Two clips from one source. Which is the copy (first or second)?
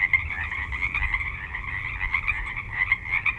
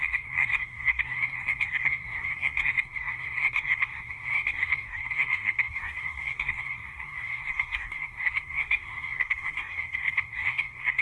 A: second